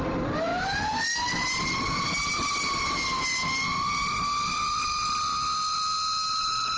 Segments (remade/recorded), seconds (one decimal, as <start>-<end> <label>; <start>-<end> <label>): 0.0-0.5 remade; 0.5-4.5 recorded; 4.5-5.3 remade; 5.3-6.8 recorded